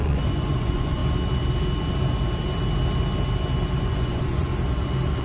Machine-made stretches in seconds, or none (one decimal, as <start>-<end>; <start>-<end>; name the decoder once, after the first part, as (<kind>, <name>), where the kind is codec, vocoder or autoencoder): 0.0-1.0 (vocoder, Vocos); 3.8-4.5